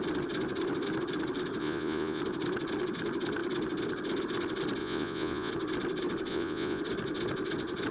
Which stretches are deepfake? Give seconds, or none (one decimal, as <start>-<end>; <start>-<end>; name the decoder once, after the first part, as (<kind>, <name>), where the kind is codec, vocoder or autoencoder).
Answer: 1.6-2.2 (vocoder, Vocos); 4.8-5.5; 6.3-6.8